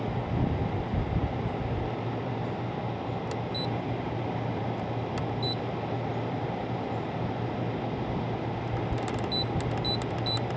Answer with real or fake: real